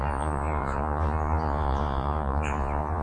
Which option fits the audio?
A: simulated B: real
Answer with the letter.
A